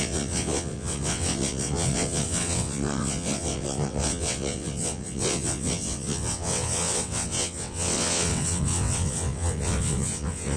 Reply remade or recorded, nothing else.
remade